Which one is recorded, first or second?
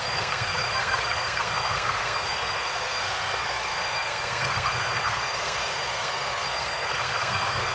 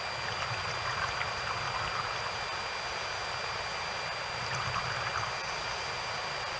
second